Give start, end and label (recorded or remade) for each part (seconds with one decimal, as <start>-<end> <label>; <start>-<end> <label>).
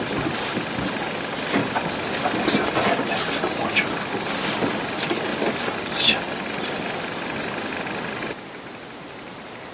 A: 0.0-9.7 recorded